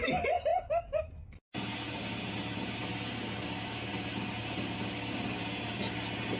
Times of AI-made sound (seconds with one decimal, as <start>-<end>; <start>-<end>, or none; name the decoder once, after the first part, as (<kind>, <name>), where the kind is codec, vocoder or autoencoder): none